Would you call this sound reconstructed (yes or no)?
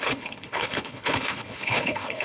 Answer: yes